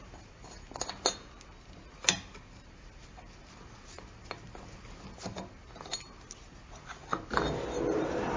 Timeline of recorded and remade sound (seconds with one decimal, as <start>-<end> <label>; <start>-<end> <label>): 0.0-8.4 recorded